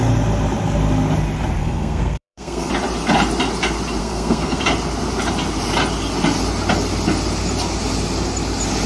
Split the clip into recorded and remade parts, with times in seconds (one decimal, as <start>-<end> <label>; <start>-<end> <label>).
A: 0.0-1.6 recorded; 1.6-2.7 remade; 2.7-4.0 recorded; 4.0-4.6 remade; 4.6-8.9 recorded